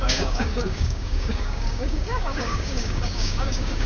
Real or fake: fake